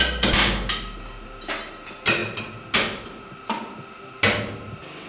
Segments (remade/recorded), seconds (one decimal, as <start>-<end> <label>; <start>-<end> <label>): 0.0-5.1 recorded